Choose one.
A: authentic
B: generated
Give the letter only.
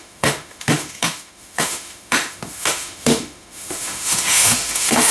B